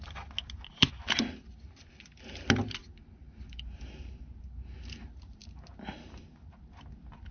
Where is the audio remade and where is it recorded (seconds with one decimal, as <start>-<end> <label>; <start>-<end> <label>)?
0.0-3.2 recorded; 3.2-4.1 remade; 4.1-7.3 recorded